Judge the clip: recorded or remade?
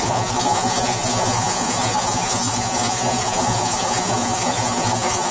remade